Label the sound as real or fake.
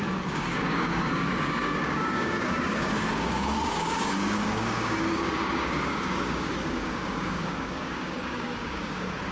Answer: fake